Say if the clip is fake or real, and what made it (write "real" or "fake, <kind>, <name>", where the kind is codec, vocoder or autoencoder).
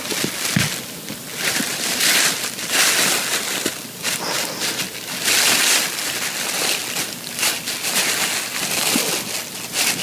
real